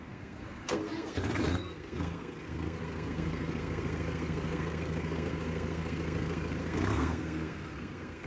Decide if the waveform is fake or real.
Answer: fake